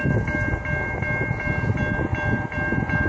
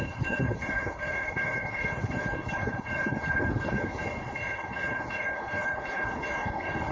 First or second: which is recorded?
first